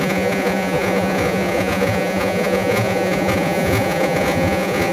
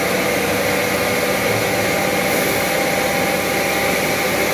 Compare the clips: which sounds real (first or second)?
second